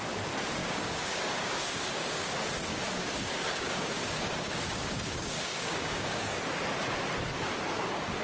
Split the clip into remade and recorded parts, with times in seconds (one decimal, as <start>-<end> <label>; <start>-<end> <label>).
0.0-0.6 recorded; 0.6-2.3 remade; 2.3-2.7 recorded; 2.7-6.4 remade; 6.4-8.2 recorded